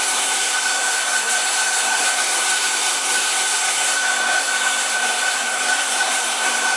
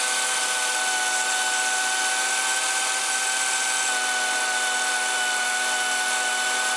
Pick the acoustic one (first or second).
second